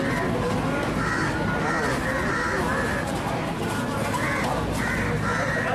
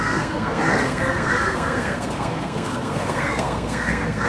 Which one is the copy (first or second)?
second